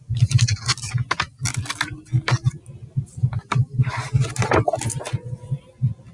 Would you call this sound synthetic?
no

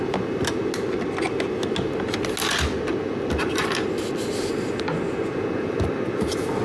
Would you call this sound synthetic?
no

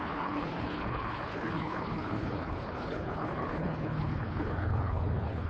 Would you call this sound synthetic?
yes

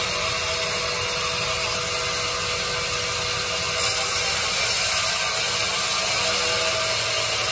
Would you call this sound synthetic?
no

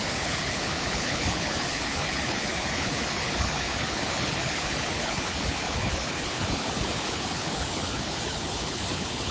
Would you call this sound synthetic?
yes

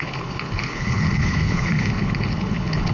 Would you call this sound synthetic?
yes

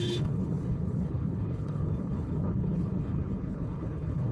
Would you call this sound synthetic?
yes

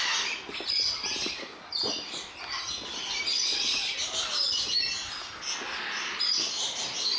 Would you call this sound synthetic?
no